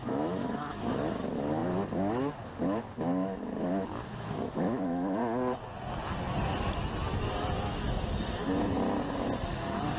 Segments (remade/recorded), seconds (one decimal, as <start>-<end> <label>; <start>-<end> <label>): 0.0-5.2 remade; 5.2-10.0 recorded